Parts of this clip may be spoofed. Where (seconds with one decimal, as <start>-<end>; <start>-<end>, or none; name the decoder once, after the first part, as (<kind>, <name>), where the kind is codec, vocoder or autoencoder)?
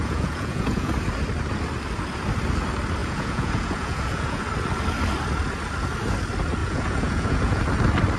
0.0-0.9 (vocoder, Vocos); 3.0-4.4; 6.6-7.6